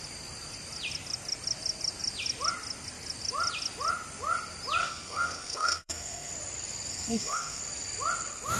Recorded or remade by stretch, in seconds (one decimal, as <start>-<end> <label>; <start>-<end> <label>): 0.0-4.8 recorded; 4.8-6.3 remade; 6.3-6.9 recorded; 6.9-7.6 remade; 7.6-8.6 recorded